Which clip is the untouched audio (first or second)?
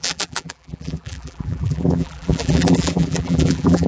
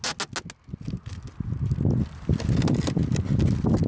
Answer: second